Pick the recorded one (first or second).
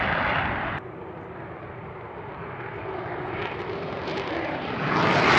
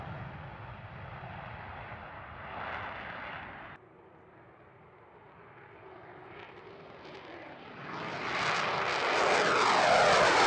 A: second